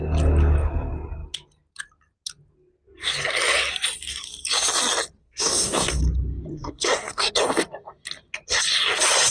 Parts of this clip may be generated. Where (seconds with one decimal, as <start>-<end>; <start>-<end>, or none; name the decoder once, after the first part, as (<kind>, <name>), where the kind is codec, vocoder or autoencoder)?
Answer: 5.2-6.0 (codec, SNAC); 6.5-7.3

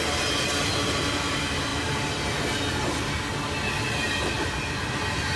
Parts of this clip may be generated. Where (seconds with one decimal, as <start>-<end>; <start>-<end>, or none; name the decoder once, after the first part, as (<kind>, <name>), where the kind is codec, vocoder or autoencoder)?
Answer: none

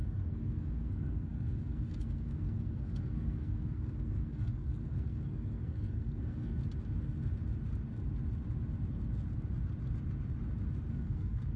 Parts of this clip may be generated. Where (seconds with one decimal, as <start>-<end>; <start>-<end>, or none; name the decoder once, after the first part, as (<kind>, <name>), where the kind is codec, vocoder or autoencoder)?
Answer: 0.0-6.5 (codec, SNAC); 10.9-11.6

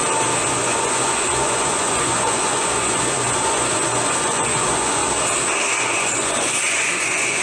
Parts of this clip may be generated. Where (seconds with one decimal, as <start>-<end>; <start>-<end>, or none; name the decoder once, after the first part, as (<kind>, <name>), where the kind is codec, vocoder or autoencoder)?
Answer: 0.5-5.0 (vocoder, Vocos); 5.8-7.4

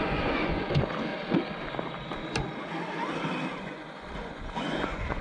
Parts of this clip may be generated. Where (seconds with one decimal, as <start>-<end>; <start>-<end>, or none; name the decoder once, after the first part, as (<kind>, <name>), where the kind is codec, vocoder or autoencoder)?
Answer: 0.0-1.1 (vocoder, Vocos); 3.6-5.2

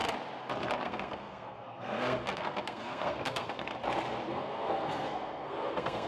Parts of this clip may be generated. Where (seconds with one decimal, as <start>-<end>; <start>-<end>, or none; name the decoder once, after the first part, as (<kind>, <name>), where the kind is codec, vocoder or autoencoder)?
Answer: 0.8-3.7 (codec, SNAC); 4.3-6.1

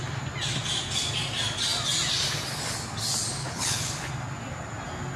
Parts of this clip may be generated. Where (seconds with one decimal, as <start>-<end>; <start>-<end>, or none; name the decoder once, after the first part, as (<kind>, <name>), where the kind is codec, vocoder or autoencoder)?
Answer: 3.4-4.1 (codec, HILCodec)

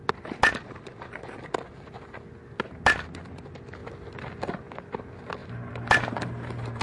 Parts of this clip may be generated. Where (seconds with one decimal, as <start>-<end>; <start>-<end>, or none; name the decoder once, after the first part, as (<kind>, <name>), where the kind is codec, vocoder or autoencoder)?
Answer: 5.4-6.8 (vocoder, BigVGAN v2)